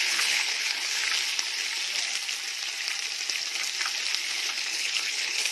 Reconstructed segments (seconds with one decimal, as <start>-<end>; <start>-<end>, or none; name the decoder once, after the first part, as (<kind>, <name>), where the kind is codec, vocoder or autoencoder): 0.0-1.0 (codec, HILCodec); 4.3-5.5